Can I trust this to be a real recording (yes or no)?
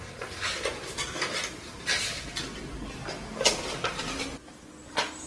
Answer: yes